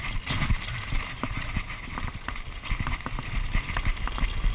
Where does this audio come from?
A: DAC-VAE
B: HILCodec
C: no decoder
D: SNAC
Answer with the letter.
C